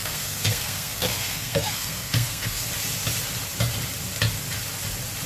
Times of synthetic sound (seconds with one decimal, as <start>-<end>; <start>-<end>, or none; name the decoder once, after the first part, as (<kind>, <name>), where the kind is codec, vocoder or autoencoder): 0.0-2.7 (codec, SNAC)